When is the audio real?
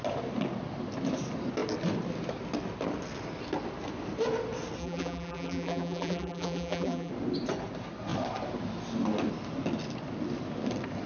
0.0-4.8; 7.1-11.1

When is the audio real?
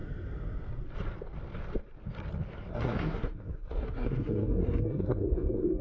0.0-2.7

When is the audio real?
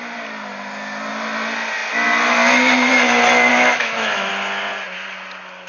0.0-3.5; 4.3-5.7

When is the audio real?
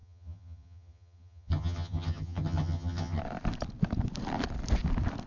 3.2-5.3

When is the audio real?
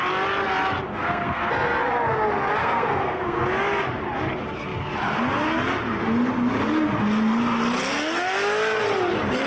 0.0-0.9; 1.5-2.6; 3.4-9.5